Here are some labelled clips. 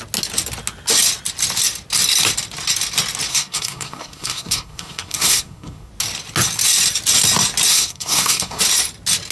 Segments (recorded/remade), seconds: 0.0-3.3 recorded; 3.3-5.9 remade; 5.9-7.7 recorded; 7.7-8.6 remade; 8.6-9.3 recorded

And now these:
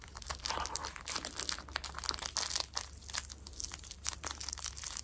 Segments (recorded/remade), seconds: 0.0-0.8 remade; 0.8-3.8 recorded; 3.8-5.0 remade

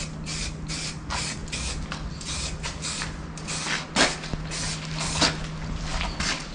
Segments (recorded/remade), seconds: 0.0-6.5 recorded

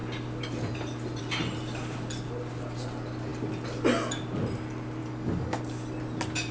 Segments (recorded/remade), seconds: 0.0-5.0 recorded; 5.0-5.6 remade; 5.6-6.5 recorded

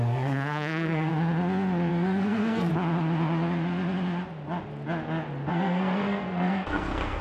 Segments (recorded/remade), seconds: 0.0-1.1 remade; 1.1-1.9 recorded; 1.9-2.7 remade; 2.7-5.5 recorded; 5.5-7.2 remade

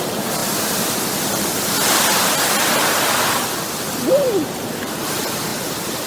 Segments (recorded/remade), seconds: 0.0-0.4 remade; 0.4-4.1 recorded; 4.1-6.1 remade

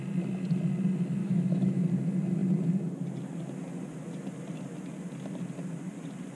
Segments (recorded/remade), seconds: 0.0-1.2 recorded; 1.2-1.8 remade; 1.8-6.3 recorded